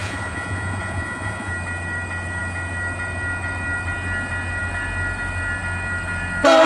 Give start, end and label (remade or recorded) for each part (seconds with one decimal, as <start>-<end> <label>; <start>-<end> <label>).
0.0-1.5 remade; 1.5-6.7 recorded